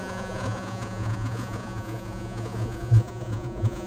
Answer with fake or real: fake